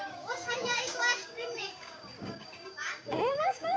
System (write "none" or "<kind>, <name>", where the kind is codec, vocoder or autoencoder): codec, DAC